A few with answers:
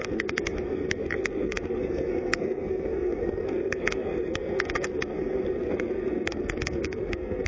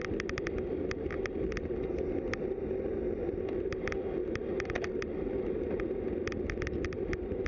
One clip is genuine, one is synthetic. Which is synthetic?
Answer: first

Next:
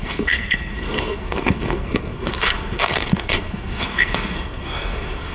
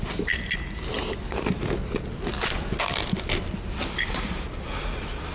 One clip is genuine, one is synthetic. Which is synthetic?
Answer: first